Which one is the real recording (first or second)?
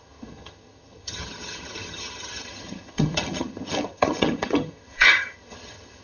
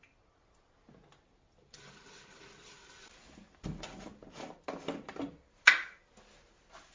second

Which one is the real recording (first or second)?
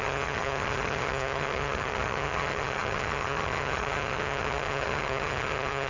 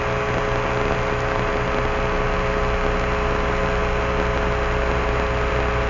second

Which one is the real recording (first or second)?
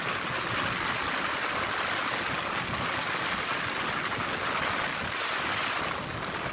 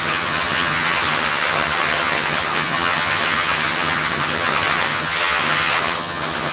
first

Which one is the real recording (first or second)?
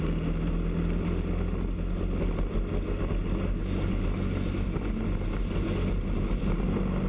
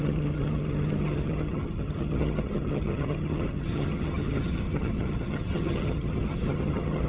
first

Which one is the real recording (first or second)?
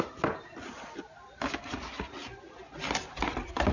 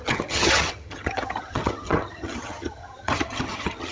first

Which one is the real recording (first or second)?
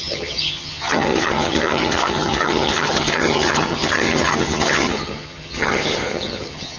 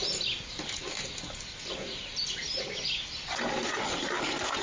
second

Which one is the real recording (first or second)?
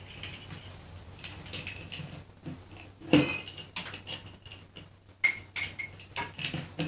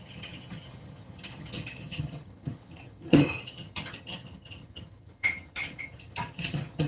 first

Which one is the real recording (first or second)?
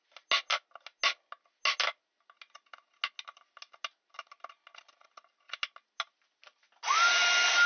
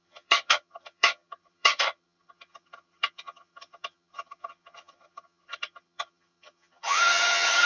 first